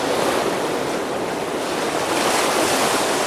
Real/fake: real